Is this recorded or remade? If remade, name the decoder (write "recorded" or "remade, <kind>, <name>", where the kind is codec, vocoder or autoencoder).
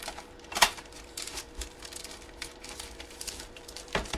remade, vocoder, BigVGAN v2